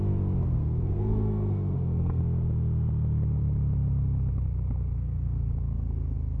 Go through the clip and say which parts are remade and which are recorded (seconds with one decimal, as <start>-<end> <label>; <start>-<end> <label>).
0.0-0.5 recorded; 0.5-2.2 remade; 2.2-4.9 recorded; 4.9-5.5 remade; 5.5-6.4 recorded